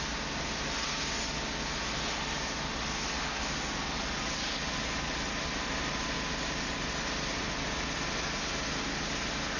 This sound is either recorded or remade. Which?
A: recorded